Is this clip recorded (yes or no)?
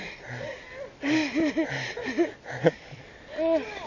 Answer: yes